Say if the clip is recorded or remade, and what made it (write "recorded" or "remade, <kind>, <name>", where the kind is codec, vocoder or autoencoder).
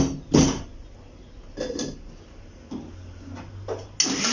recorded